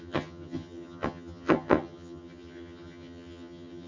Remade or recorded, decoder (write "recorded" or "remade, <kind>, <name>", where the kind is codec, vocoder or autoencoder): remade, vocoder, HiFi-GAN